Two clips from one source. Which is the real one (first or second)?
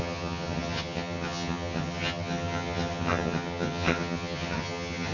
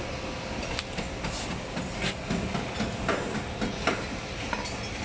second